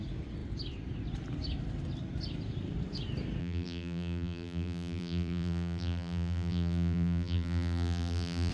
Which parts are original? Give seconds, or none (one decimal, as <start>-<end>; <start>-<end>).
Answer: 0.0-3.4